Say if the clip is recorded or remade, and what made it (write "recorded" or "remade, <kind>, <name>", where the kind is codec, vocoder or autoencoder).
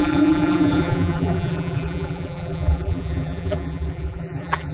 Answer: remade, vocoder, BigVGAN v2